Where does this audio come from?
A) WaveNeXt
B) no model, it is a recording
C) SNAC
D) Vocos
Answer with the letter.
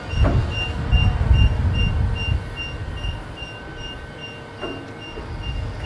B